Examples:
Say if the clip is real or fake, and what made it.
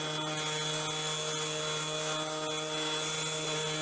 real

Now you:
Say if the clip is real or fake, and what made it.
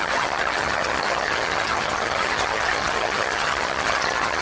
fake, vocoder, HiFi-GAN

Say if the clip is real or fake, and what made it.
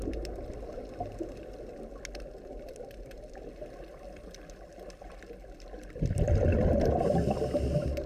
real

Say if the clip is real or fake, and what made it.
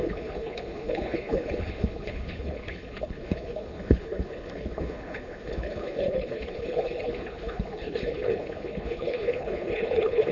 fake, codec, HILCodec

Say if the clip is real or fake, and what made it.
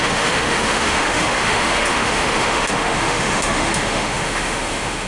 fake, autoencoder, DAC-VAE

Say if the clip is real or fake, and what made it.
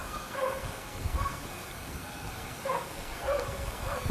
fake, codec, SNAC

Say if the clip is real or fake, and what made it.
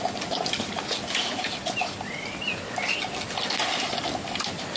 real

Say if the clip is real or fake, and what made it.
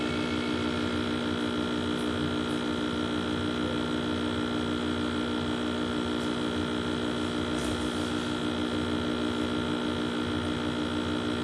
real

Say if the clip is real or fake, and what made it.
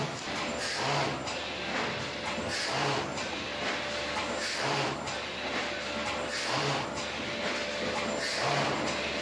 real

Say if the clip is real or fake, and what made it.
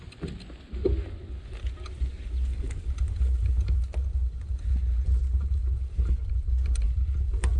real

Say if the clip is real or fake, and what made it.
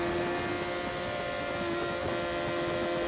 real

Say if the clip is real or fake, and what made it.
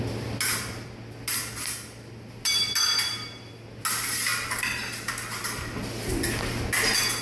real